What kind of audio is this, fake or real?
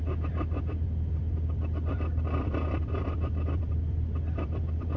fake